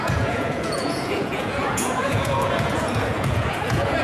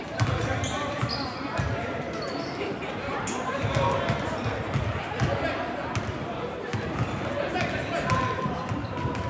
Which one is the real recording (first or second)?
second